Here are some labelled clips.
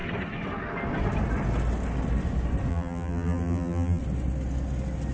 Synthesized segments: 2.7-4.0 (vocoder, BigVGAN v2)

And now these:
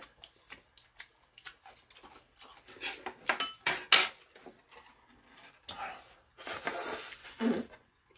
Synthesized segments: 7.2-8.2 (vocoder, Vocos)

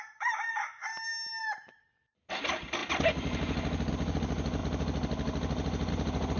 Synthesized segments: none